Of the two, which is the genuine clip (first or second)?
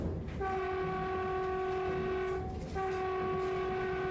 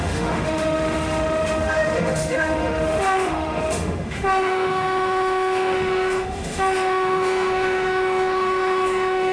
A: first